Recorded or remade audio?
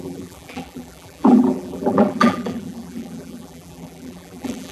remade